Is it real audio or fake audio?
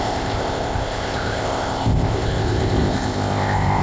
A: fake